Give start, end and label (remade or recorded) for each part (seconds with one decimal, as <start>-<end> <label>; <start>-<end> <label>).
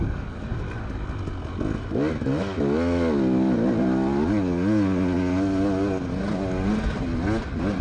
0.0-0.5 remade; 0.5-7.8 recorded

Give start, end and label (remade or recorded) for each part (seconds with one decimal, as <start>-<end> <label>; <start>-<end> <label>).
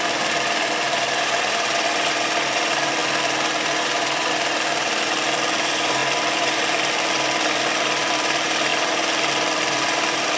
0.0-10.4 remade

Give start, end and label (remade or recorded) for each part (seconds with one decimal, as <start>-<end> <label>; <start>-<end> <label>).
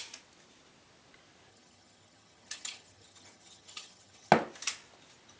0.0-1.5 recorded; 1.5-4.3 remade; 4.3-5.4 recorded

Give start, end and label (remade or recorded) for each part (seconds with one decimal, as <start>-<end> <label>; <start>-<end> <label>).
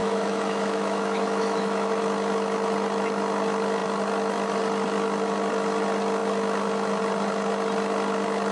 0.0-2.0 remade; 2.0-8.5 recorded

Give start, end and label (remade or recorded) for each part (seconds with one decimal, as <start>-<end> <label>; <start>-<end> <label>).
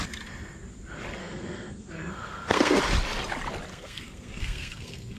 0.0-1.2 recorded; 1.2-2.8 remade; 2.8-3.7 recorded; 3.7-5.2 remade